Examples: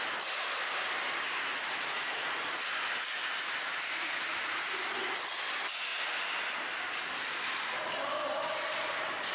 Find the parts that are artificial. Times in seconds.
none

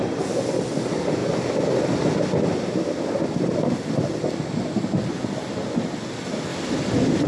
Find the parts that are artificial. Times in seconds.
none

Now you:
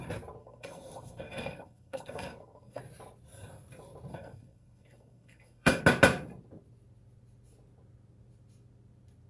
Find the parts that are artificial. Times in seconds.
0.4-2.8 (codec, SNAC); 4.1-5.8